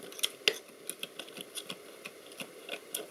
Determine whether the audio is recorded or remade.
recorded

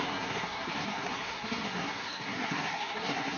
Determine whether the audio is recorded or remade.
remade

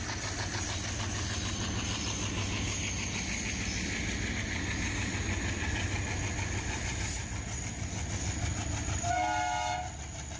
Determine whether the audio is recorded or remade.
recorded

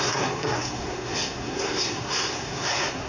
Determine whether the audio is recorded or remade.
remade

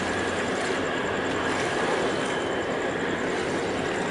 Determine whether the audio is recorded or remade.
recorded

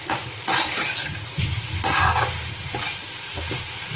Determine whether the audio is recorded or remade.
recorded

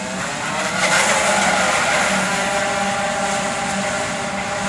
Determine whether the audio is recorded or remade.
recorded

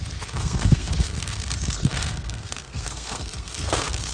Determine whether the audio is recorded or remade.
remade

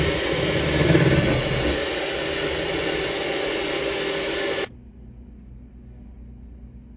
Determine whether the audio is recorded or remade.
recorded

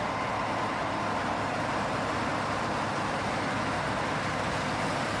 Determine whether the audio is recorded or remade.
recorded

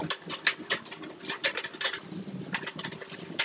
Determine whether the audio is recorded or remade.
recorded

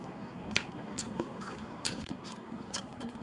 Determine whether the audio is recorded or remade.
remade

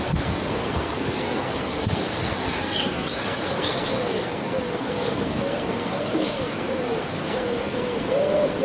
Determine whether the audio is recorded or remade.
remade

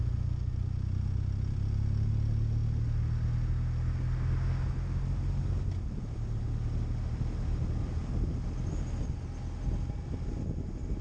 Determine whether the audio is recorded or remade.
recorded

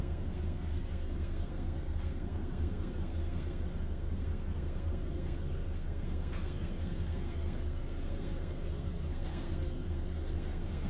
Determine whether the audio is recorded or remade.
remade